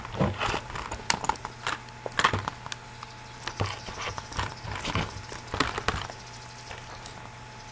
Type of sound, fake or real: real